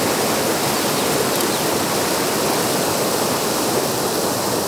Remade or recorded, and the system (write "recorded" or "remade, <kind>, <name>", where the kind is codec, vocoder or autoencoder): recorded